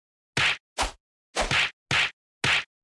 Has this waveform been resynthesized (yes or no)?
no